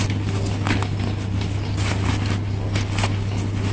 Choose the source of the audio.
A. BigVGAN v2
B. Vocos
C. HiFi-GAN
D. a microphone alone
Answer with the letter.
D